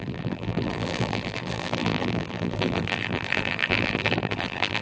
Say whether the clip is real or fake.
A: fake